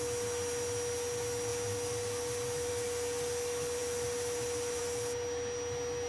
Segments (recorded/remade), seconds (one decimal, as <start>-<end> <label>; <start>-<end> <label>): 0.0-6.1 recorded